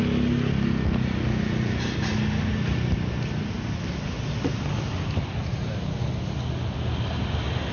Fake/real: real